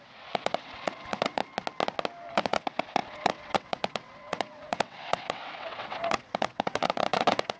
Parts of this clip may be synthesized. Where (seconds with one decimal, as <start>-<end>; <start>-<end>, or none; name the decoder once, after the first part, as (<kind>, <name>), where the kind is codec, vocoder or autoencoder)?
0.0-1.4 (vocoder, WaveNeXt); 2.3-7.6